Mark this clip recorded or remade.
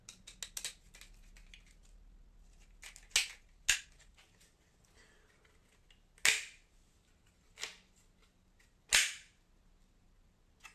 recorded